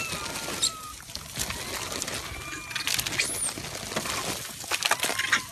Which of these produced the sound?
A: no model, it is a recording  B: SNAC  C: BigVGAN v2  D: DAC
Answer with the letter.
A